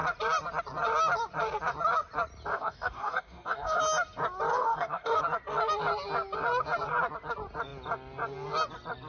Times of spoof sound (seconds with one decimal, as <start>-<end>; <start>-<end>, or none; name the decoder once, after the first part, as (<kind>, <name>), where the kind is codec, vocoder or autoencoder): 2.5-3.8 (codec, DAC); 4.5-5.2